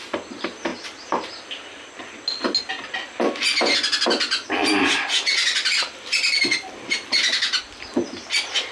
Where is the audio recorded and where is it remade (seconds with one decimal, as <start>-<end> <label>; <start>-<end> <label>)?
0.0-8.7 recorded